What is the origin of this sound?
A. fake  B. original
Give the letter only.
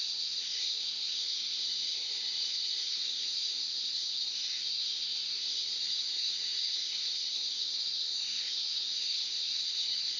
A